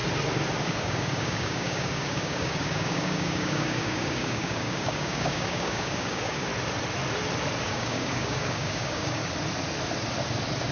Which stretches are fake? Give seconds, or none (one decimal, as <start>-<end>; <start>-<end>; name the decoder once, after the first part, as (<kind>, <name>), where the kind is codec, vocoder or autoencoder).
0.6-6.5 (codec, DAC); 7.6-9.2